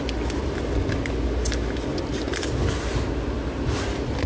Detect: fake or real real